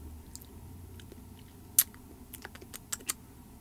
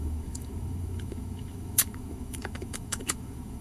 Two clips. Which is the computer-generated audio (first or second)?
second